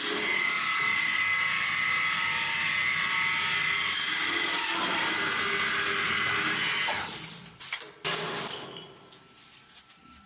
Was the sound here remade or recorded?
recorded